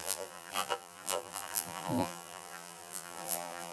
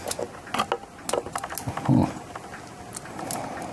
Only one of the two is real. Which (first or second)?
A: second